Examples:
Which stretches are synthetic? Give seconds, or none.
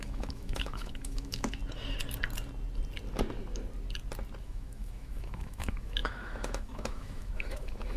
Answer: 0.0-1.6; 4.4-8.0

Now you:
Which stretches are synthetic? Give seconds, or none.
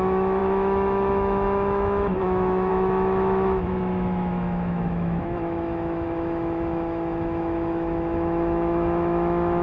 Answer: 0.0-9.6